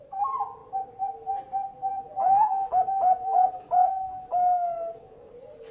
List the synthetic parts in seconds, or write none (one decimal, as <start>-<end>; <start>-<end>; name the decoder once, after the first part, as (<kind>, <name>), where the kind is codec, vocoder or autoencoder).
1.9-5.3 (codec, DAC)